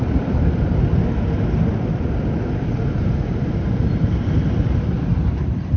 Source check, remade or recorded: remade